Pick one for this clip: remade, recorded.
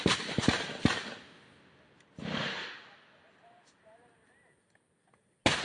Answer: recorded